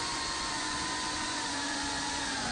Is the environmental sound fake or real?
fake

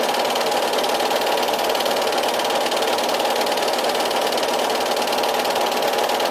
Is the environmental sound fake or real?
real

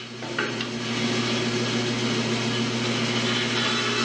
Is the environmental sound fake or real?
real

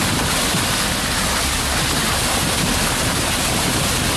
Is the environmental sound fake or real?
real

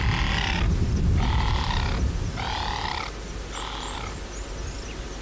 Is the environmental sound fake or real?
real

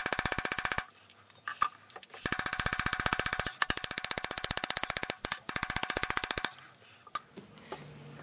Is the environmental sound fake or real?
real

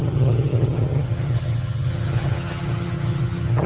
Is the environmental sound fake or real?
fake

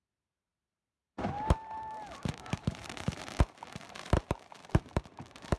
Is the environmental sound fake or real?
fake